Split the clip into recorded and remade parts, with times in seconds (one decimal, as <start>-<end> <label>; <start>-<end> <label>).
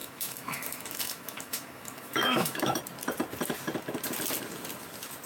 0.0-2.8 remade; 2.8-5.3 recorded